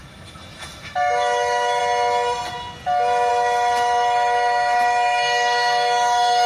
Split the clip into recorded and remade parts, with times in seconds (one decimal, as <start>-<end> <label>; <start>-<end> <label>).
0.0-1.8 remade; 1.8-3.3 recorded; 3.3-6.5 remade